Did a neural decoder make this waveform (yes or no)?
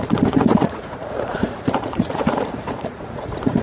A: yes